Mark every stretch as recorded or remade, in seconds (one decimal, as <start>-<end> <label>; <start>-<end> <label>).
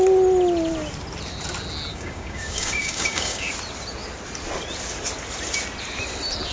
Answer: 0.0-1.9 recorded; 1.9-3.5 remade; 3.5-6.5 recorded